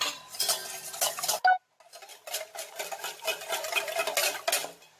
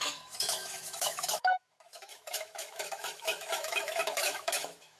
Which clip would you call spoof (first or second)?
second